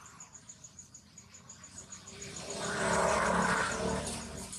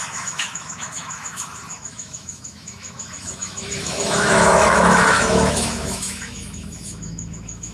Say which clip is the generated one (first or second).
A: second